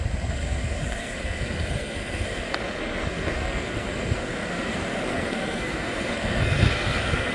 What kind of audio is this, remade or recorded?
remade